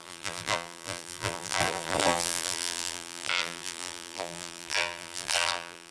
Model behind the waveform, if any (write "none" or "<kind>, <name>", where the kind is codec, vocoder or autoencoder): vocoder, BigVGAN v2